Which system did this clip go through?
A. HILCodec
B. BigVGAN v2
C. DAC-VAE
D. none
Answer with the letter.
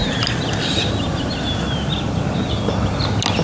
D